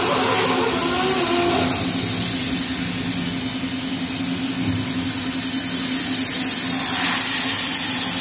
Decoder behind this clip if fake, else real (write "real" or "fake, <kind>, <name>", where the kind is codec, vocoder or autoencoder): real